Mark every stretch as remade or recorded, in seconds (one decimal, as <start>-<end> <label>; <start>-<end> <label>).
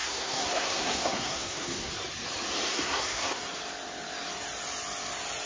0.0-1.9 remade; 1.9-2.7 recorded; 2.7-3.4 remade; 3.4-5.5 recorded